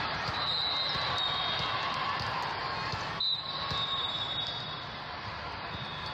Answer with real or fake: real